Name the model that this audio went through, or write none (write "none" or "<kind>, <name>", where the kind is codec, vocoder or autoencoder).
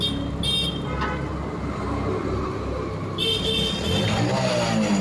none